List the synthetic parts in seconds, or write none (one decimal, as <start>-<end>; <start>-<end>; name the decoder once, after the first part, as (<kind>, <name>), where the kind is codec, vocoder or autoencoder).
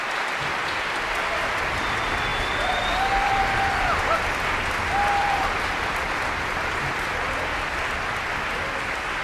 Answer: none